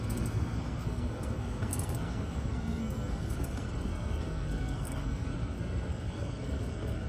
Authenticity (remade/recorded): remade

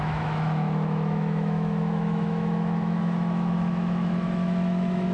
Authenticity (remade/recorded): remade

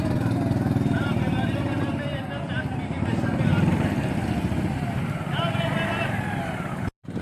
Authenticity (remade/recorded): recorded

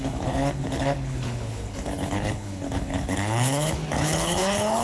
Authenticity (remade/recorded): remade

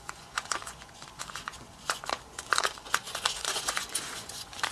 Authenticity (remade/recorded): remade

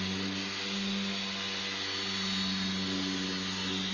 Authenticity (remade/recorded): recorded